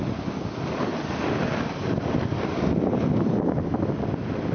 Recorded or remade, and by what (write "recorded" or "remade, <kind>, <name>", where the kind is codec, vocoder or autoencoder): recorded